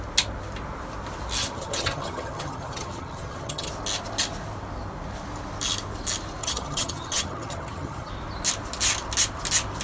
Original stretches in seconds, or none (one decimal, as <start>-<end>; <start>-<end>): 0.0-1.4; 3.7-6.4; 8.1-9.8